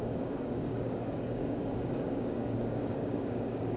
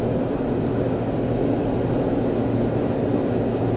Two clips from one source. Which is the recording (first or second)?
second